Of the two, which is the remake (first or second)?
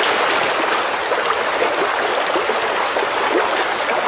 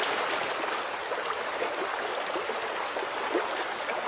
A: second